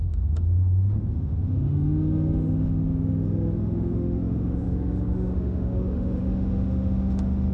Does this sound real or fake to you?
fake